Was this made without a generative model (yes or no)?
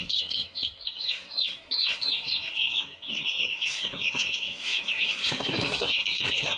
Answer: no